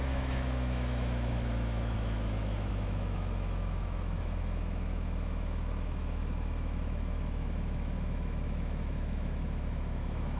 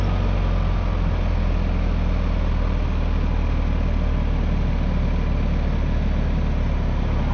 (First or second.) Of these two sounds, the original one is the second